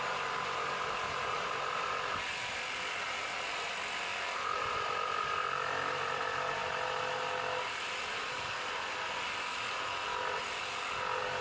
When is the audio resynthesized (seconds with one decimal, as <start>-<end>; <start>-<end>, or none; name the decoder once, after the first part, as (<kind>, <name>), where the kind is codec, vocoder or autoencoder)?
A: none